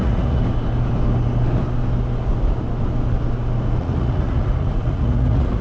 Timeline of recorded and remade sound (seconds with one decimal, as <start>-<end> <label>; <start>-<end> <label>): 0.0-0.4 remade; 0.4-3.8 recorded; 3.8-5.6 remade